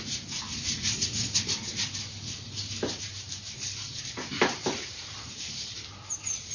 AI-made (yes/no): yes